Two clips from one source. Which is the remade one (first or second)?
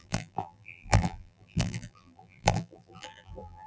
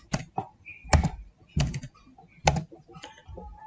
first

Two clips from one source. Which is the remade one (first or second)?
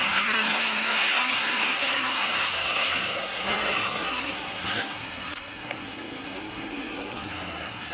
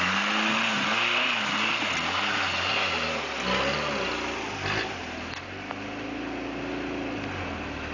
first